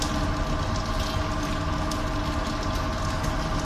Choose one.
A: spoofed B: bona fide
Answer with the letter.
B